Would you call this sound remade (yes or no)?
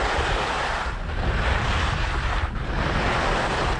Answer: no